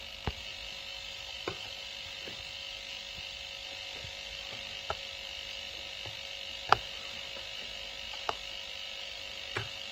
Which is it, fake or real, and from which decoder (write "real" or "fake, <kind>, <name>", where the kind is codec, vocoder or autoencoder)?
real